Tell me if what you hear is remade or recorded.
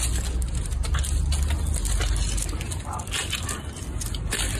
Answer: recorded